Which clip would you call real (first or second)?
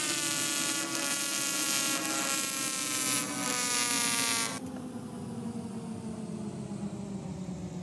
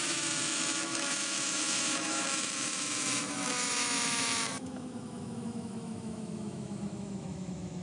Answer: first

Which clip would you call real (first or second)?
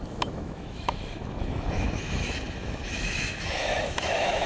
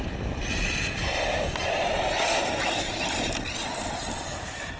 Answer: second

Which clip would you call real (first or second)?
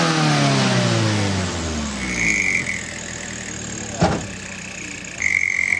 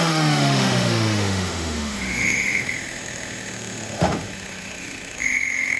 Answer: first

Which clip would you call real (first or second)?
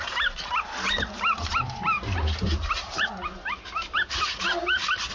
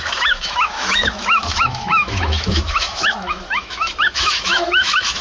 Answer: first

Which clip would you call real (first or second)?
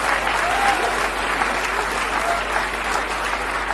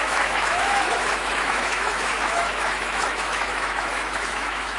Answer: first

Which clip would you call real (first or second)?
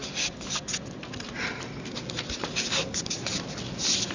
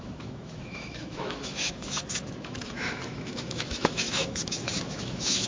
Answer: first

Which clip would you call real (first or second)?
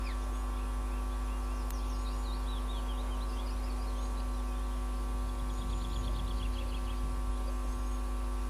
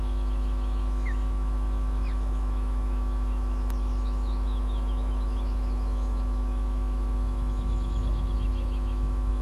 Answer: first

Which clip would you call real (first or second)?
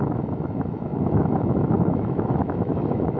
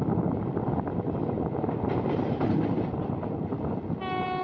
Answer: second